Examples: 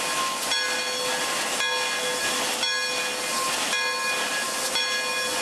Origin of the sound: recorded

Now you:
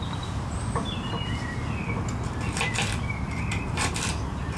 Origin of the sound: recorded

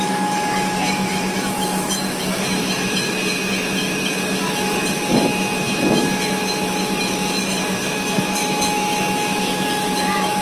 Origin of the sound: remade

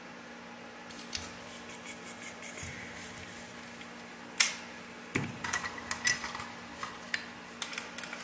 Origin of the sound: recorded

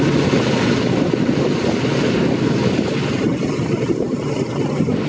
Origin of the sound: recorded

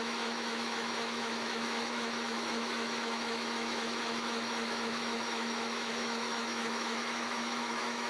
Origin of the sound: remade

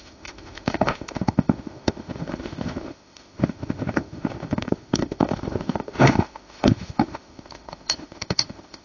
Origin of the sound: remade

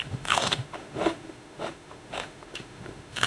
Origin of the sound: remade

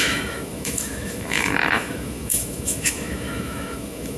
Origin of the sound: remade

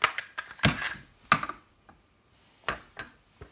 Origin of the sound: recorded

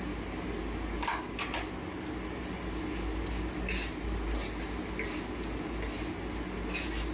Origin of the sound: recorded